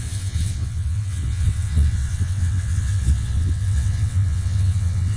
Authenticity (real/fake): fake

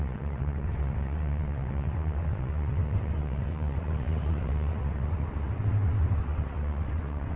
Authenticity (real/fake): fake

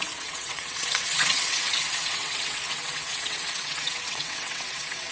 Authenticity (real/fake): fake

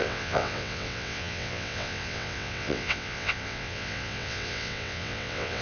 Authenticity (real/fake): fake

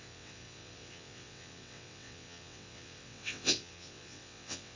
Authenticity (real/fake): fake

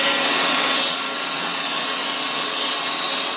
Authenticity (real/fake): fake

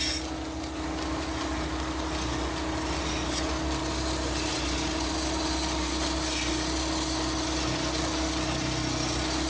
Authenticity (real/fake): real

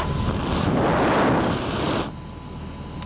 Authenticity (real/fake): real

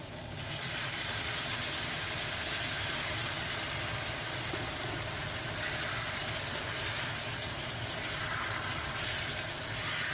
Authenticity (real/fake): real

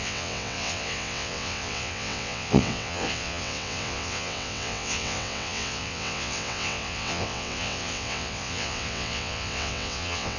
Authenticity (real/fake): fake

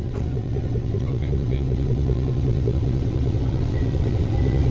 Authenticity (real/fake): fake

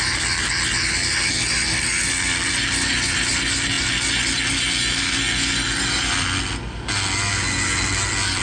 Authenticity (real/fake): real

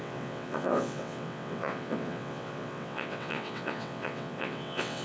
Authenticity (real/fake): fake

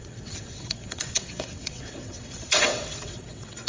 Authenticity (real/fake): fake